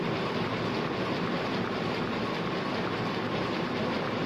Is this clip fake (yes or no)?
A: no